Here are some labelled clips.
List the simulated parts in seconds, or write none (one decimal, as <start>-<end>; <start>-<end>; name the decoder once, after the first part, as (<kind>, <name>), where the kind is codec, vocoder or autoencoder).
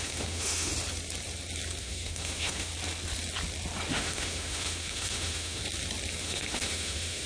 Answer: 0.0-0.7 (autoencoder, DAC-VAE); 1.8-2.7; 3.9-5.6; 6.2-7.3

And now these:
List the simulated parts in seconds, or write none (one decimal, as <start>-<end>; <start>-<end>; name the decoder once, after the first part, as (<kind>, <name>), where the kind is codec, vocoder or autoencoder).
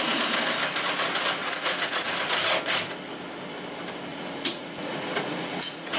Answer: 1.4-2.1 (vocoder, Vocos); 4.1-6.0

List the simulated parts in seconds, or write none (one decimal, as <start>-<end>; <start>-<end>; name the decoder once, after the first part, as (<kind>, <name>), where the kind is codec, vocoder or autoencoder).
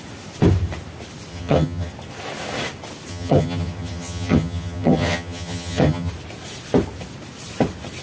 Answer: 1.3-1.9 (vocoder, HiFi-GAN); 3.1-6.1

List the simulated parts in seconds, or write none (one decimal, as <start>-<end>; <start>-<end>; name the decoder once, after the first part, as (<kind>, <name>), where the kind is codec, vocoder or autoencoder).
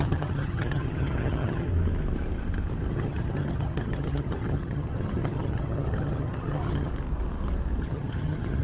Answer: 0.0-1.7 (vocoder, HiFi-GAN); 2.9-6.9; 7.8-8.6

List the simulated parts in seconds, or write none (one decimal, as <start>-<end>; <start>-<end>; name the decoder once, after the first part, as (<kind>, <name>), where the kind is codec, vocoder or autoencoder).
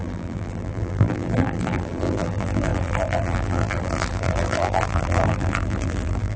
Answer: 0.0-6.4 (vocoder, BigVGAN v2)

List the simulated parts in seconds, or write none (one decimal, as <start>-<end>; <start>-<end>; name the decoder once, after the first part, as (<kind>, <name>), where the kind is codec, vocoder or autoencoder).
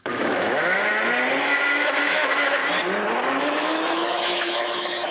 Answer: 0.0-0.9 (autoencoder, DAC-VAE); 1.4-2.6; 3.4-5.1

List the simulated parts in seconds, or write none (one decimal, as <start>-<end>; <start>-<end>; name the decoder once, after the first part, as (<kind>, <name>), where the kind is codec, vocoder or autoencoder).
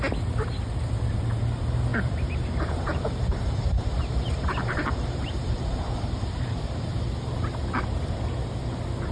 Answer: 1.9-7.0 (vocoder, BigVGAN v2)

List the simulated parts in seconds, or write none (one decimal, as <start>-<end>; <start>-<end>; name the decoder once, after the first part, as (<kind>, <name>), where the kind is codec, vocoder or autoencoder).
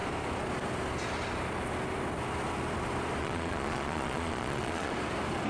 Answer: 3.2-4.9 (vocoder, Vocos)